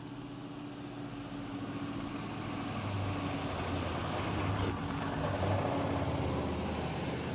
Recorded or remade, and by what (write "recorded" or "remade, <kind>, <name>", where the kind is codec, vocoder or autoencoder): recorded